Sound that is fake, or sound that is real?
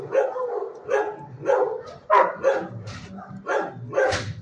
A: real